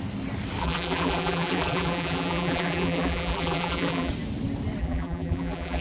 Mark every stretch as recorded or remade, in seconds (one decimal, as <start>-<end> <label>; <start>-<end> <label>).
0.0-0.6 recorded; 0.6-4.1 remade; 4.1-4.8 recorded; 4.8-5.8 remade